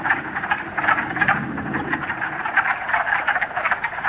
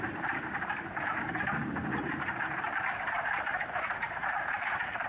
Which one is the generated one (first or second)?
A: second